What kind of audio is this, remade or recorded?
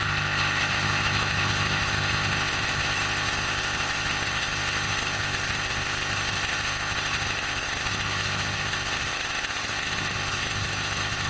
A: remade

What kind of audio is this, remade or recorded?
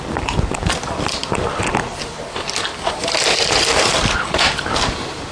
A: recorded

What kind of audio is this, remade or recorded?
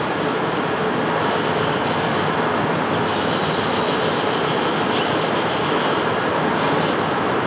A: recorded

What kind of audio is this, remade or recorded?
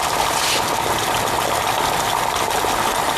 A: recorded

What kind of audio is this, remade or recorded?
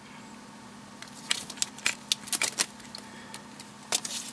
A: recorded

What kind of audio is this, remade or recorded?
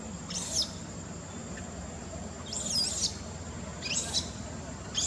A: recorded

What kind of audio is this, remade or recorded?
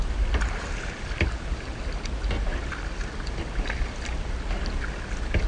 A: recorded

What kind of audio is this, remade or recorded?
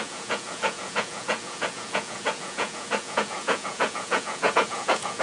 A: remade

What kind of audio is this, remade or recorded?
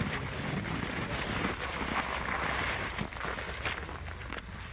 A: recorded